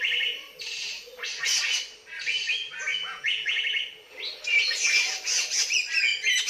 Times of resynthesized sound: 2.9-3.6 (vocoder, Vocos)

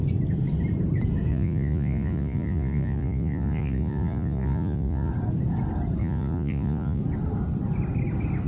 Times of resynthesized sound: 1.3-5.1 (vocoder, Vocos); 6.0-7.0

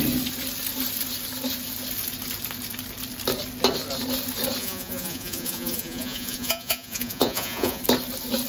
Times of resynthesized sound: 4.6-7.8 (vocoder, Vocos)